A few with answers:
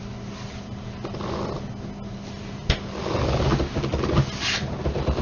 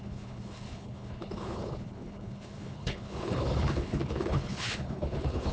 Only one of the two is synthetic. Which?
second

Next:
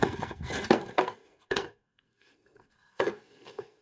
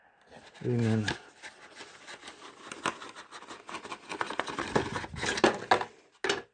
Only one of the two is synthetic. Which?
first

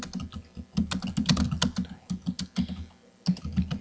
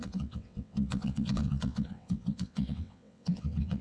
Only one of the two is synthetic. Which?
second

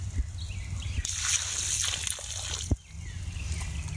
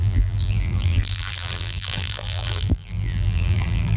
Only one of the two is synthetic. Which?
second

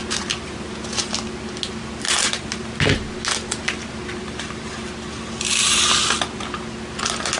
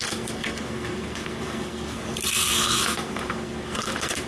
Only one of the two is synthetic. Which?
second